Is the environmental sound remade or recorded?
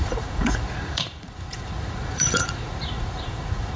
remade